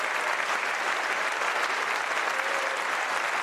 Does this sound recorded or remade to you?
recorded